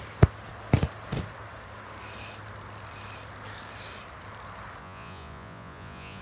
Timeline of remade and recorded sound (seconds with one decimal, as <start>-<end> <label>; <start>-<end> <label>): 0.0-4.8 recorded; 4.8-6.2 remade